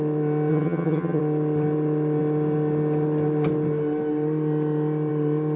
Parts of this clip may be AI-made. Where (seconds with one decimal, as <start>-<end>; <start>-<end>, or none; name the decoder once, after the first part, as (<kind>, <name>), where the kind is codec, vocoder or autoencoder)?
0.5-1.2 (vocoder, HiFi-GAN)